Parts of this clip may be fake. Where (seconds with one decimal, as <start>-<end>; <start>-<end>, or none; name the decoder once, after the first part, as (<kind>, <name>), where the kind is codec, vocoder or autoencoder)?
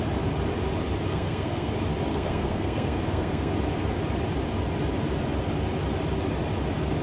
1.1-1.7 (codec, SNAC); 2.1-3.5